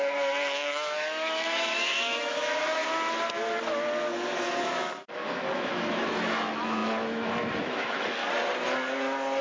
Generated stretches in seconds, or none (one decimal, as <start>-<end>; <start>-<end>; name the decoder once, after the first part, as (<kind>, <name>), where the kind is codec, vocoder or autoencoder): 0.0-2.8 (autoencoder, DAC-VAE); 4.6-8.2